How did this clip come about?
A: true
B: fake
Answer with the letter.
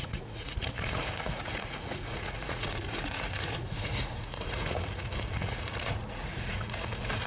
B